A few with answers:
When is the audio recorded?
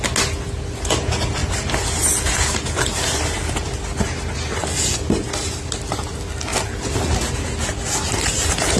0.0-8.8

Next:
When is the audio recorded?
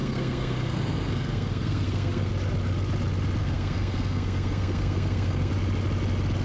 2.3-3.4; 5.5-6.4